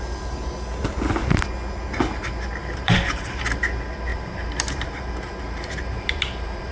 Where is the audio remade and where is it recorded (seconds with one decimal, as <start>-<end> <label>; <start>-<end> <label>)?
0.0-2.6 recorded; 2.6-3.4 remade; 3.4-4.1 recorded; 4.1-6.7 remade